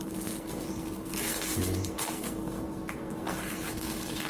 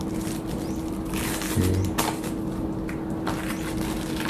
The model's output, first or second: first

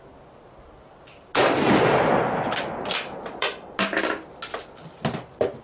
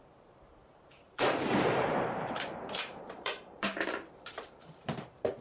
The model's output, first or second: second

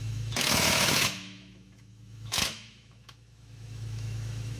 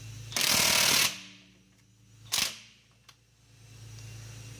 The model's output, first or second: first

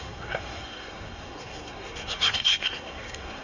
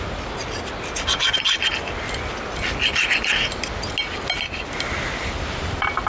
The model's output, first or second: first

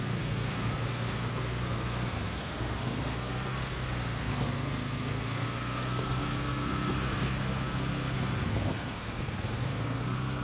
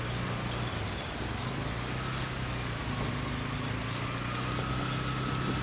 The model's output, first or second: first